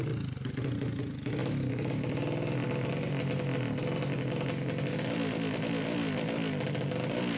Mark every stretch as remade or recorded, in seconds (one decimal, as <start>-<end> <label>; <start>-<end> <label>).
0.0-7.4 recorded